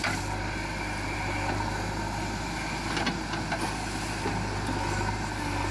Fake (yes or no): no